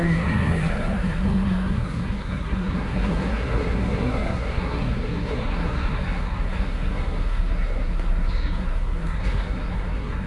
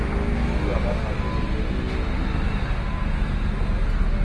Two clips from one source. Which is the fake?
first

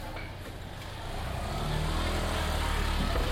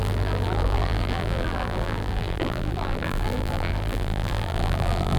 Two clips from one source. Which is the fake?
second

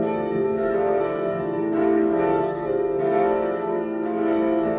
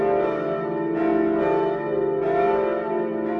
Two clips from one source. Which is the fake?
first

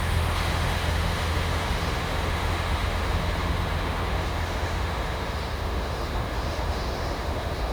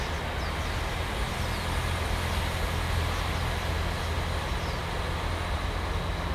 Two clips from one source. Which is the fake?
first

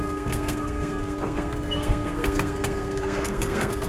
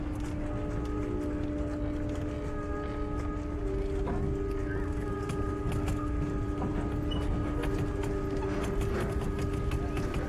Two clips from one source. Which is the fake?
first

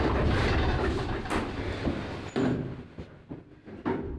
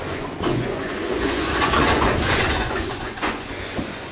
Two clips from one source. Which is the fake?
second